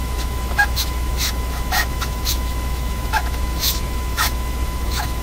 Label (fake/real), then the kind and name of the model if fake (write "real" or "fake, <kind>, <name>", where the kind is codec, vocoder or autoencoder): fake, autoencoder, DAC-VAE